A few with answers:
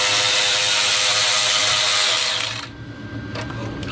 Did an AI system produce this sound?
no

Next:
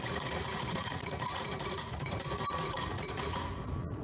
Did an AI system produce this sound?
yes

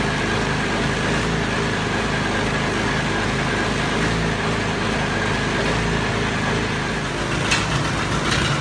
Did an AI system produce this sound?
no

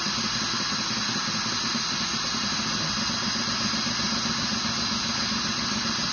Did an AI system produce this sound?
no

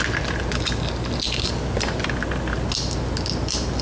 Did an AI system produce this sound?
no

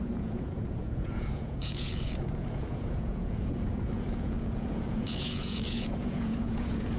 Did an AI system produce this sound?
yes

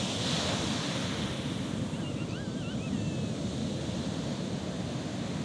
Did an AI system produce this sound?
no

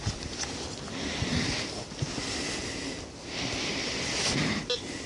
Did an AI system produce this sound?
no